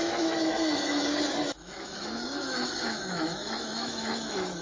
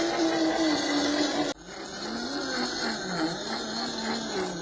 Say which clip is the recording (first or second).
second